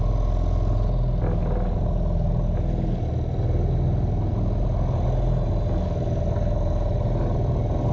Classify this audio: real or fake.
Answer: real